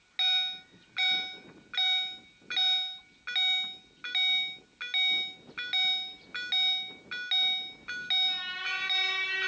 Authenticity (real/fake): real